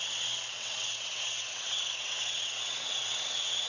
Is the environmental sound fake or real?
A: fake